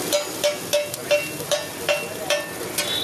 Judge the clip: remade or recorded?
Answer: recorded